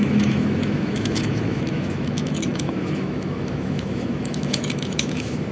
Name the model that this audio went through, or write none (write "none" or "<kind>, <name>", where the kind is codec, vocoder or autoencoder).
autoencoder, DAC-VAE